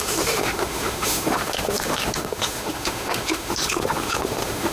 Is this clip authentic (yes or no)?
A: no